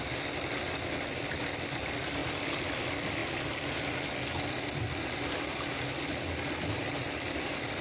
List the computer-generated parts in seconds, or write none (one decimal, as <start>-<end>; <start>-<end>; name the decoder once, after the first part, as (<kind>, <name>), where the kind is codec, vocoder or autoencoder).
2.2-2.7 (vocoder, BigVGAN v2)